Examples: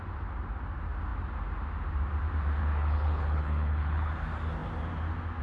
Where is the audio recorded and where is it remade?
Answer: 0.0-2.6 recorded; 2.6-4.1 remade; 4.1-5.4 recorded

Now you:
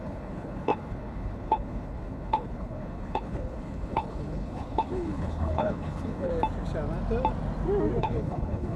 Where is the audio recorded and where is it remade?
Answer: 0.0-6.3 remade; 6.3-8.0 recorded; 8.0-8.8 remade

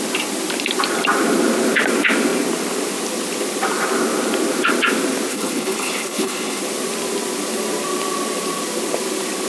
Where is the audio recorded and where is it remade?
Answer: 0.0-5.3 recorded; 5.3-6.6 remade; 6.6-9.5 recorded